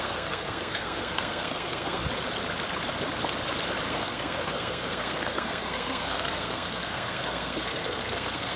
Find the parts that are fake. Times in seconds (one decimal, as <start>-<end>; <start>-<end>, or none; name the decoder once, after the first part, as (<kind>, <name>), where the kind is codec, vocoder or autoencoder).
0.0-2.0 (codec, SNAC); 3.9-8.6

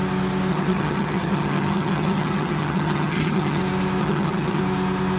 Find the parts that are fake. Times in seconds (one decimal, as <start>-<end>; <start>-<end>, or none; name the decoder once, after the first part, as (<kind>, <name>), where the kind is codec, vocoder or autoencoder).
0.5-3.6 (vocoder, HiFi-GAN); 4.0-4.6

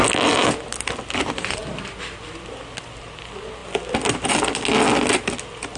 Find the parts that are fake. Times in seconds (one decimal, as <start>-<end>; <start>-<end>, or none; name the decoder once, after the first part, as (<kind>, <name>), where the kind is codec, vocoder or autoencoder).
none

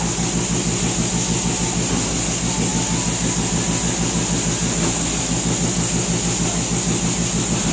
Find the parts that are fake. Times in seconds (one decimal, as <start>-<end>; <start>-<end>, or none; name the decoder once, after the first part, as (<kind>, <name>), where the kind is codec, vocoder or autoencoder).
none

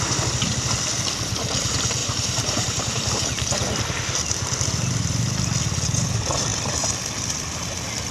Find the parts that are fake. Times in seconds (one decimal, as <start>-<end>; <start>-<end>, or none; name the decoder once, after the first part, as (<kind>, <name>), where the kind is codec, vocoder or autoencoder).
2.0-3.1 (vocoder, BigVGAN v2)

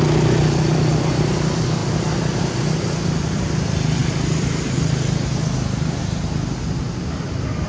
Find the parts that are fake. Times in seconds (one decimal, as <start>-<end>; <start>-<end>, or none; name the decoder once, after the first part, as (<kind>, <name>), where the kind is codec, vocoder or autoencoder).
0.0-4.0 (vocoder, BigVGAN v2); 6.8-7.7